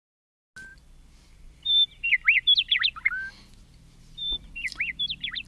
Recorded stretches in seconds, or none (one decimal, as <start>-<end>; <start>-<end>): 0.0-5.5